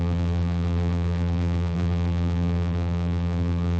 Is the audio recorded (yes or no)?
no